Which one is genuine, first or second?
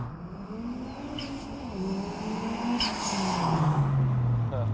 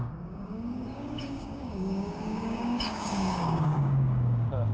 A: first